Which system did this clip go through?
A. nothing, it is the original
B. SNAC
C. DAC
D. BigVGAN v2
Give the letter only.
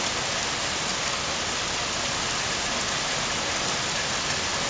A